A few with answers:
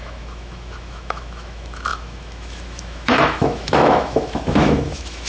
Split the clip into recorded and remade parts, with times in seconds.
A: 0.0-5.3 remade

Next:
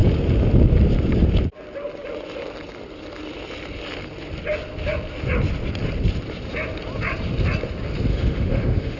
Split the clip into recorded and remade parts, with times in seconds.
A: 0.0-8.1 recorded; 8.1-9.0 remade

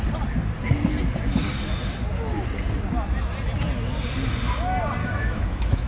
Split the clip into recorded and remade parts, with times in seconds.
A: 0.0-5.0 recorded; 5.0-5.9 remade